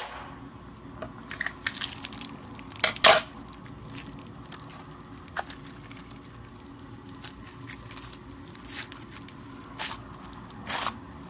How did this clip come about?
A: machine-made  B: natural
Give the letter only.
B